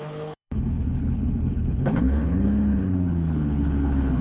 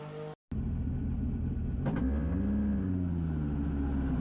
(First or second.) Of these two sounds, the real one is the second